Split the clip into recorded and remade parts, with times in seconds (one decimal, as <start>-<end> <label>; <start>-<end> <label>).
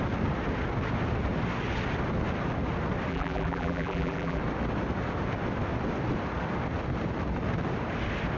0.0-3.1 recorded; 3.1-4.4 remade; 4.4-8.4 recorded